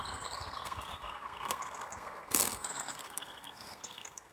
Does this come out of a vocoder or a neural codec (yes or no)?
yes